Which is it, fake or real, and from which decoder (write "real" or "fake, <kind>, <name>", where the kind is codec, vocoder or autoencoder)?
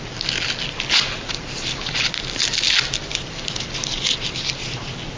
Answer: real